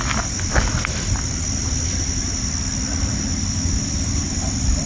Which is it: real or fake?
real